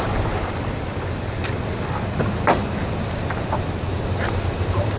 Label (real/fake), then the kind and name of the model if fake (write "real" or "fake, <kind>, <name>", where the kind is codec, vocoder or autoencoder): real